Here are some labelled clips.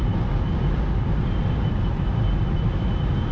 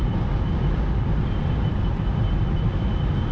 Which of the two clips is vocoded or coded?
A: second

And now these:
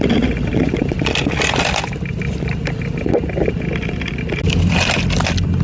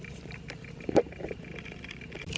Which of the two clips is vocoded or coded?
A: second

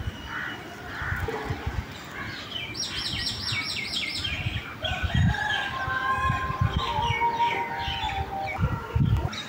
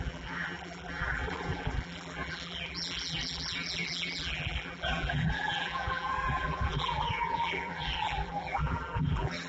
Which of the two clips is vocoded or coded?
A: second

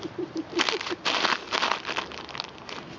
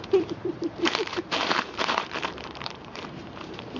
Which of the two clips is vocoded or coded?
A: second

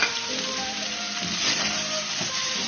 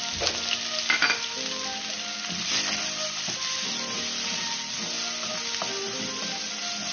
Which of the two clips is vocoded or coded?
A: first